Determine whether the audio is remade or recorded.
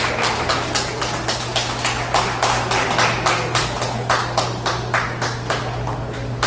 recorded